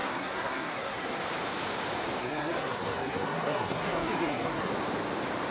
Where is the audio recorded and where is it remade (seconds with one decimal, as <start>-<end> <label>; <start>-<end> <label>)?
0.0-1.2 remade; 1.2-2.2 recorded; 2.2-4.7 remade; 4.7-5.5 recorded